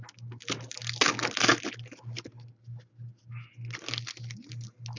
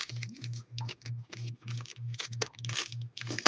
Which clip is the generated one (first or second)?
second